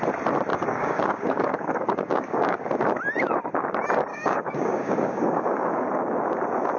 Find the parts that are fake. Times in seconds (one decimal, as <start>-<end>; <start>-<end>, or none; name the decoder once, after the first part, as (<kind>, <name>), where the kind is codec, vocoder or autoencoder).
0.5-2.7 (codec, DAC); 4.1-5.9